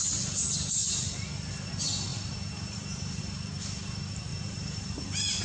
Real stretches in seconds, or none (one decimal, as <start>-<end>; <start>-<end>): 0.0-2.1; 3.2-4.3